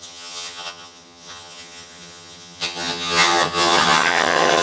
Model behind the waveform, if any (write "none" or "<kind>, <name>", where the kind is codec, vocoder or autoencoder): vocoder, HiFi-GAN